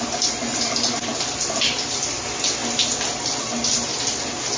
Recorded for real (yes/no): yes